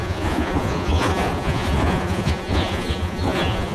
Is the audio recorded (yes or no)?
no